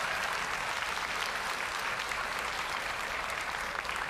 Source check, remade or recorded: recorded